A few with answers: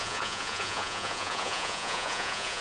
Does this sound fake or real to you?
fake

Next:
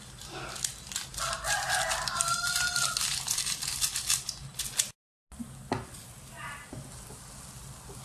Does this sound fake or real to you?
real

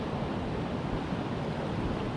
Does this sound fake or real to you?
real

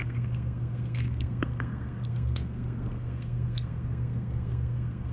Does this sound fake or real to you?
fake